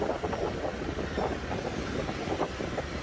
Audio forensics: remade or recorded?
recorded